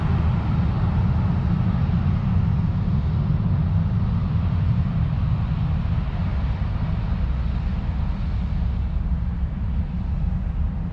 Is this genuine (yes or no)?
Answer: yes